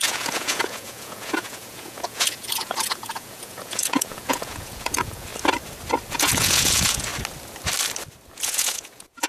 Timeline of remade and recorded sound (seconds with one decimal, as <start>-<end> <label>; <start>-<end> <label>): 0.0-5.3 remade; 5.3-6.1 recorded; 6.1-7.1 remade; 7.1-8.3 recorded; 8.3-9.3 remade